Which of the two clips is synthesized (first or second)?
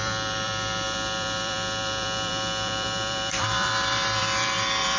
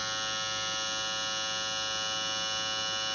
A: first